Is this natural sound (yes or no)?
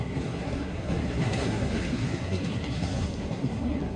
no